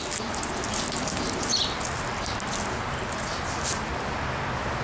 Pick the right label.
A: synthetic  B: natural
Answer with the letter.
B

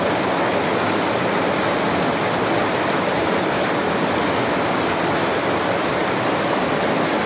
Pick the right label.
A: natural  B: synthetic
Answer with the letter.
A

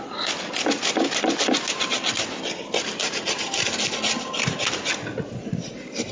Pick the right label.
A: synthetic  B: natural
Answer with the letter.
B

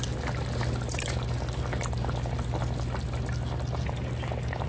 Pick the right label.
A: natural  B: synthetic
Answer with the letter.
A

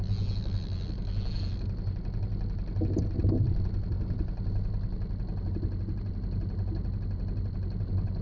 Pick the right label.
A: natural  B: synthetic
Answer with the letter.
A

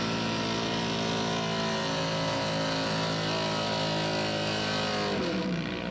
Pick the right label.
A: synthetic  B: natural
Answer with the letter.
B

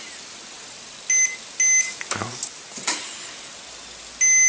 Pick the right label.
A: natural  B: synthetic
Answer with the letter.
A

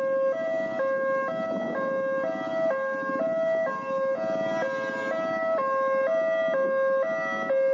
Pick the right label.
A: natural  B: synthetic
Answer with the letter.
A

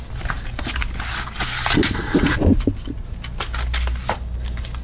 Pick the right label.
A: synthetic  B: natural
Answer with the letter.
B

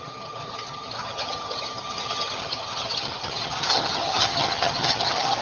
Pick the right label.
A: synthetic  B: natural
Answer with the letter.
A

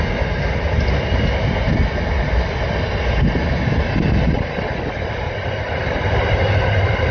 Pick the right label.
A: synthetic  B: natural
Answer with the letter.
B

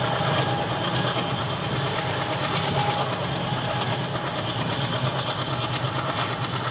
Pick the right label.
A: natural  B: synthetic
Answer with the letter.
A